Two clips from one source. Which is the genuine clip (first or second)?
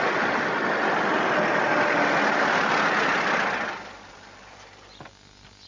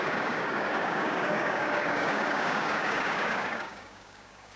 first